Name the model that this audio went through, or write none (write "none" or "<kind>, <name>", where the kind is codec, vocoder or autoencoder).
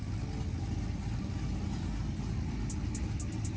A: none